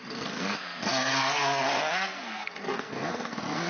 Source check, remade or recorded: remade